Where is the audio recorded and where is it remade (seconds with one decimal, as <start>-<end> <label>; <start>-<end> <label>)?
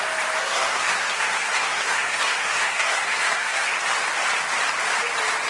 0.0-0.4 recorded; 0.4-3.7 remade; 3.7-5.5 recorded